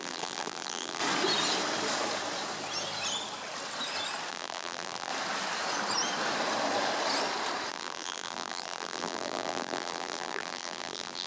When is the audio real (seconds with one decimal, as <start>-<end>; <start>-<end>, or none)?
1.0-4.3; 5.1-7.7

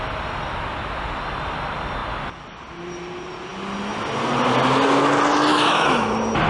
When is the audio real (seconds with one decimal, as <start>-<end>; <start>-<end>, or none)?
0.0-5.5; 6.1-6.5

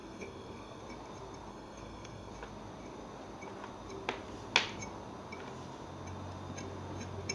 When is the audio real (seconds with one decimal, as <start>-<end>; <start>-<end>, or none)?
0.8-1.5; 2.3-7.3

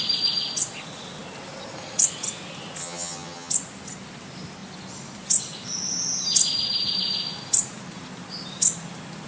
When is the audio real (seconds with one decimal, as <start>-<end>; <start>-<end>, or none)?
0.0-2.8; 3.5-9.3